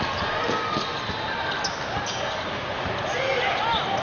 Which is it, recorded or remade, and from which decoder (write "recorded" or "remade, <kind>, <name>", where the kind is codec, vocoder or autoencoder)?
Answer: recorded